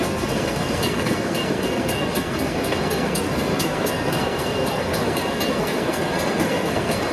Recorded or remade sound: remade